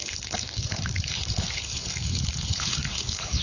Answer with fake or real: fake